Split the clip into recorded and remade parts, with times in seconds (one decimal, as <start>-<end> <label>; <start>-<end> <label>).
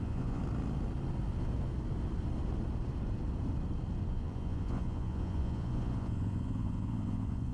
0.0-0.4 remade; 0.4-4.1 recorded; 4.1-7.5 remade